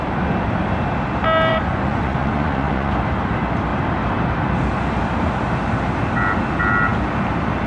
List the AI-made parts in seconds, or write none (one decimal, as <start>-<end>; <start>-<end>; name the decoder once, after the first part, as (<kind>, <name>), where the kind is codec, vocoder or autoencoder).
1.5-2.9 (vocoder, Vocos)